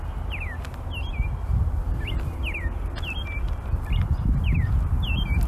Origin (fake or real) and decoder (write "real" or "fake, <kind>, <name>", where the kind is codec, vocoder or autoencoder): real